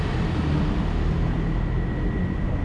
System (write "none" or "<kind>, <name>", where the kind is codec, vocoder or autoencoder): none